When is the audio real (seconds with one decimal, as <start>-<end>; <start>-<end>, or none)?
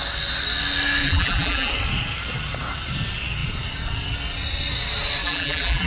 0.0-1.0; 1.7-5.2